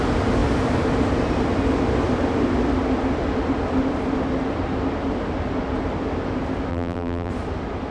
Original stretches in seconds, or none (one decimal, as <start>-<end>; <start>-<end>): 0.0-6.7; 7.3-7.9